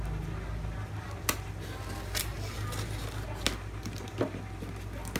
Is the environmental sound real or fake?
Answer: real